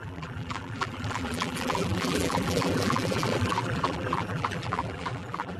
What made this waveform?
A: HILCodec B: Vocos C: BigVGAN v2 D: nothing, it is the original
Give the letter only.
C